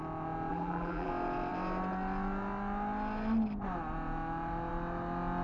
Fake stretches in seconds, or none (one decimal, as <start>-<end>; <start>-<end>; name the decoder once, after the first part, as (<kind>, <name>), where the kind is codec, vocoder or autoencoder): 0.5-1.1 (vocoder, BigVGAN v2)